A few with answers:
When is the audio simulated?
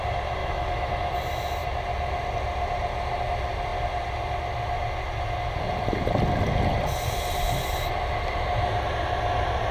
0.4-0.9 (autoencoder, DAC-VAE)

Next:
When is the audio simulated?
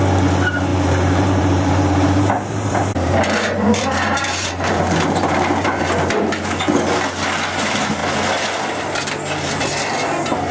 0.7-5.8 (vocoder, BigVGAN v2)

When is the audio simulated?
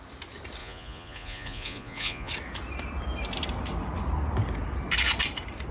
0.6-2.3 (vocoder, Vocos)